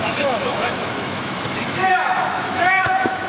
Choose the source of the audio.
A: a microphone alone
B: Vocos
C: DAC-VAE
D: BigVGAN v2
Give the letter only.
C